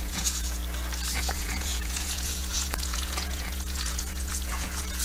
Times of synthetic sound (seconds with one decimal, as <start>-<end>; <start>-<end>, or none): 0.0-0.6; 1.2-5.0